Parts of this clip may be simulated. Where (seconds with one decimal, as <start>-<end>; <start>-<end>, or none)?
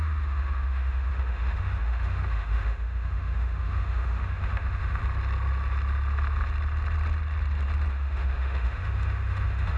0.0-5.0; 7.9-9.8